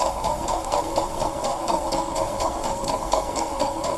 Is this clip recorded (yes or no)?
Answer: no